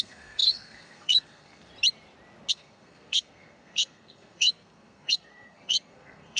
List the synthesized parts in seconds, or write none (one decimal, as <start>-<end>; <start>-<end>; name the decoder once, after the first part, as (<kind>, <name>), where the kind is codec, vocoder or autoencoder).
0.0-1.7 (codec, SNAC); 2.5-6.4